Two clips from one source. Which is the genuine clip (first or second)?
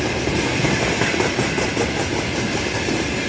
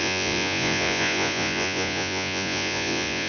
first